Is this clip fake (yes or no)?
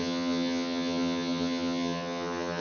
yes